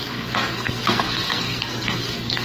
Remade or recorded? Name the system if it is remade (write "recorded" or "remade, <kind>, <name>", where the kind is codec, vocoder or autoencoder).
remade, codec, SNAC